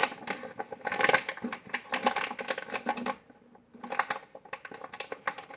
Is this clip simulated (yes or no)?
no